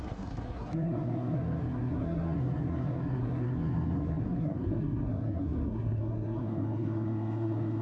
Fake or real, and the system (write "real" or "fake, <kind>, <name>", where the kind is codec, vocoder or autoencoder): fake, codec, SNAC